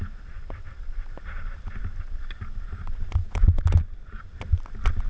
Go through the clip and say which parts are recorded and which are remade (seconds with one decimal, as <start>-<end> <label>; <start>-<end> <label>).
0.0-3.2 recorded; 3.2-3.8 remade; 3.8-5.1 recorded

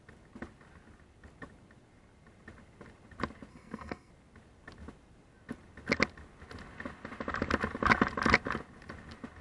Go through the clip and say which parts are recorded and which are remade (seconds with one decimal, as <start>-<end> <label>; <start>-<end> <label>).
0.0-3.5 recorded; 3.5-4.1 remade; 4.1-9.4 recorded

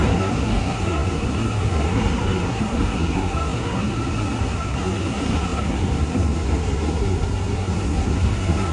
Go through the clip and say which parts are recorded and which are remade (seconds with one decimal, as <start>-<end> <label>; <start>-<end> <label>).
0.0-8.7 remade

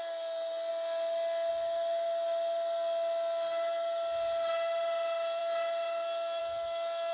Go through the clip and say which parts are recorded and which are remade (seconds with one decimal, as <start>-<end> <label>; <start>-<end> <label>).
0.0-7.1 recorded